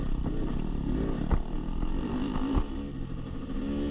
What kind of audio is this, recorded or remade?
recorded